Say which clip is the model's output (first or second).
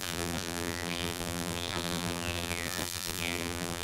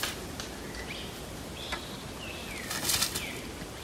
first